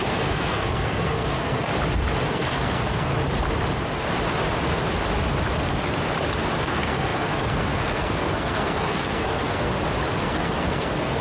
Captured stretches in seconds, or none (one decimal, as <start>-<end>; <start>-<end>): 1.7-2.3; 3.1-6.6; 9.7-10.2